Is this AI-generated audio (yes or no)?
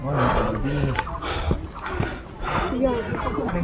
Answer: no